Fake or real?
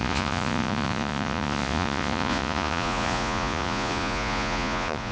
fake